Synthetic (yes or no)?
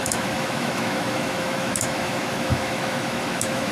yes